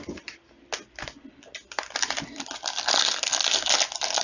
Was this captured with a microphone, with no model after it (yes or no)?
yes